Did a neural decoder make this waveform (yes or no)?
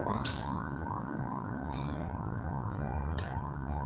yes